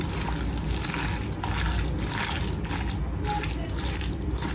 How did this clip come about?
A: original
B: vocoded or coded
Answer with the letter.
A